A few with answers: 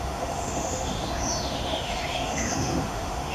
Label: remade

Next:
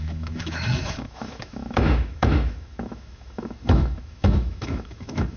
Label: remade